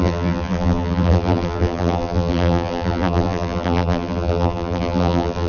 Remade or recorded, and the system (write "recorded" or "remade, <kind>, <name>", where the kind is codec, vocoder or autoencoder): remade, vocoder, BigVGAN v2